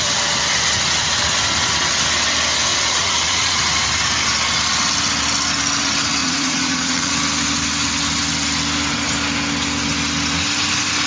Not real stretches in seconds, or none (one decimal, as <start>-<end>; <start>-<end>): 2.7-3.6; 6.2-7.1